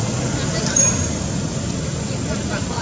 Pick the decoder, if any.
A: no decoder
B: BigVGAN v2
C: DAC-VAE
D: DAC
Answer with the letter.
A